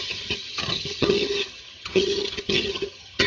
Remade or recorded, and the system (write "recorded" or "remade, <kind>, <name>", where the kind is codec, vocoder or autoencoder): remade, vocoder, HiFi-GAN